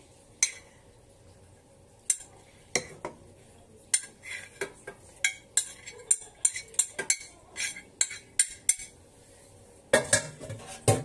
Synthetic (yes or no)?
no